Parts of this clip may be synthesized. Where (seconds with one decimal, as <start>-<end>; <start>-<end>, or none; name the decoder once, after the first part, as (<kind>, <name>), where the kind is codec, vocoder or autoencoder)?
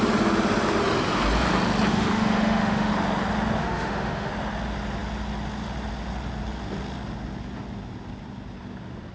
1.9-2.9 (autoencoder, DAC-VAE); 3.6-4.3